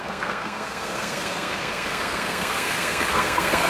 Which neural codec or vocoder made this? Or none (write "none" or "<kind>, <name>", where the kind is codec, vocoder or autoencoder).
codec, SNAC